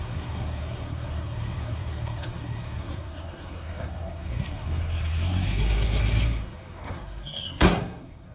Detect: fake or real fake